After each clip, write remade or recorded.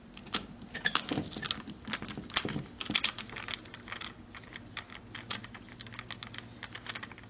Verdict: recorded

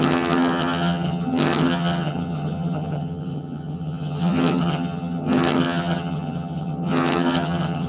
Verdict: remade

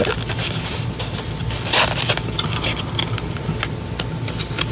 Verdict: recorded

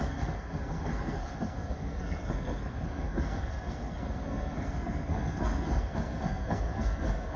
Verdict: remade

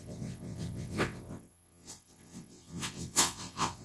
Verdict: remade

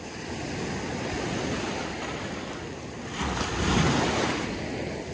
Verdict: recorded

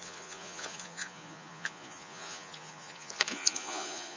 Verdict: remade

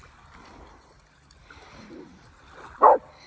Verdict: remade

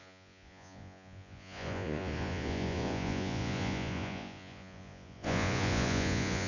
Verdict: remade